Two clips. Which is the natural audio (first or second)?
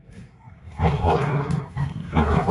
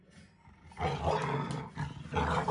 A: second